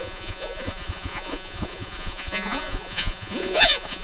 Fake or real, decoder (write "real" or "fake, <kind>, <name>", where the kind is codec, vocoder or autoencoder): fake, vocoder, Vocos